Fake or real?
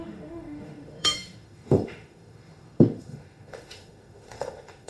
fake